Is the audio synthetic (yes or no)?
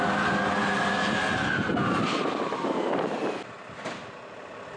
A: no